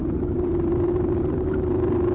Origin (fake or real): fake